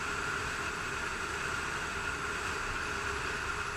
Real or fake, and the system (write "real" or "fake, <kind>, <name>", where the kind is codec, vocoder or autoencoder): real